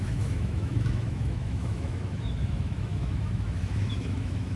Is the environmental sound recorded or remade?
remade